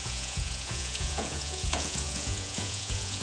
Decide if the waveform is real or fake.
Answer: fake